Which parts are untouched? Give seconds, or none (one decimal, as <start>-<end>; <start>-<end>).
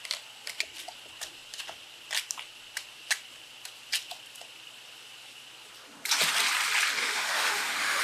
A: 0.0-7.0